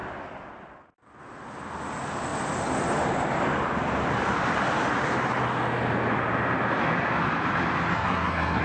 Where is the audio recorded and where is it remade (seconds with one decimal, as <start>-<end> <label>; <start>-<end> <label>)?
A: 0.0-7.9 recorded; 7.9-8.6 remade